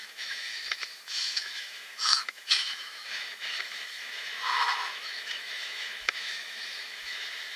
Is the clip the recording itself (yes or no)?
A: no